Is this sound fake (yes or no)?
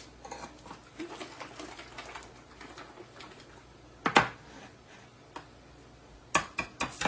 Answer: no